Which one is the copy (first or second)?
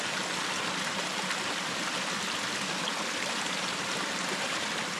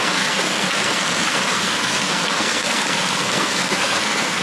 second